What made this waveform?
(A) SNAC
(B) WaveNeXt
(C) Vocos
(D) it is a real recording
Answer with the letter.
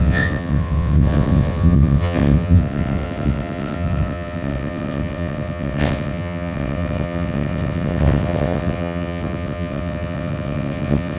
B